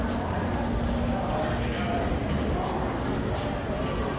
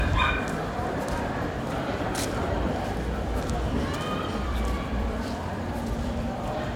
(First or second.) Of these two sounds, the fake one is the second